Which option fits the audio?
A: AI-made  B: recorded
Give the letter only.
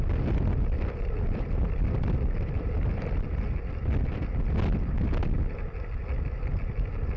B